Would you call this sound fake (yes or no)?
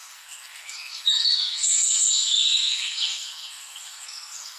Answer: yes